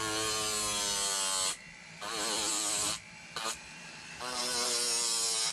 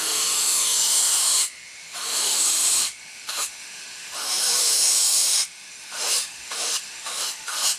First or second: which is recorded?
first